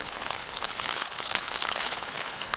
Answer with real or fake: fake